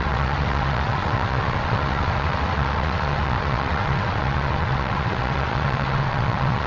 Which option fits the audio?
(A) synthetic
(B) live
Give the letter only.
A